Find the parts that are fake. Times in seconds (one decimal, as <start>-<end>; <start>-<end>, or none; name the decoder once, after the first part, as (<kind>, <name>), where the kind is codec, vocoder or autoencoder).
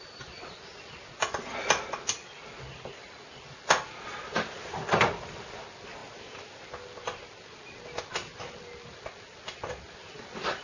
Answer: none